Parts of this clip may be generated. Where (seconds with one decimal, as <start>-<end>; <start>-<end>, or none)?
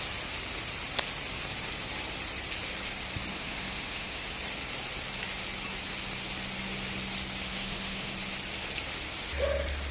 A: 3.3-4.2; 7.5-8.1